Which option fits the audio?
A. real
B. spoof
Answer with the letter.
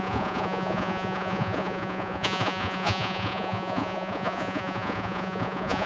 B